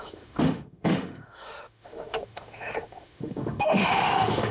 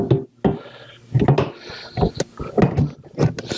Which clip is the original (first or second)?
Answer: second